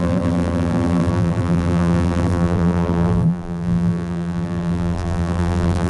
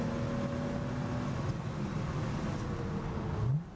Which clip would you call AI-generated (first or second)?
first